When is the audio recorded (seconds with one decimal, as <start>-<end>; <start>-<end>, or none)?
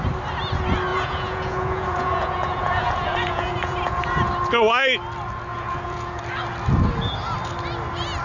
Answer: 0.0-0.9; 4.3-5.5; 6.2-8.2